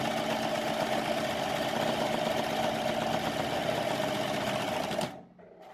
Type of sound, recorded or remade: recorded